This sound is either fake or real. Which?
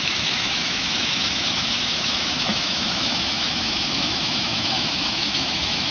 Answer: fake